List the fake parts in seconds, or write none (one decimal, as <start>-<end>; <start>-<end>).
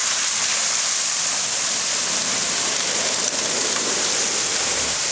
0.0-5.1